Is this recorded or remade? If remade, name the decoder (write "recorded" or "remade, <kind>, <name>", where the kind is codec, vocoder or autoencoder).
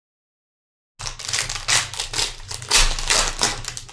recorded